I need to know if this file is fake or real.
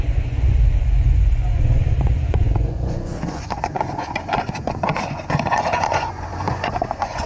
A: fake